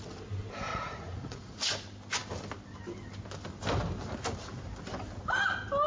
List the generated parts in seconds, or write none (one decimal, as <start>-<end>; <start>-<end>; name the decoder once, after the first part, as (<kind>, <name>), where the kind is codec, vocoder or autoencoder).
0.7-1.6 (vocoder, Vocos)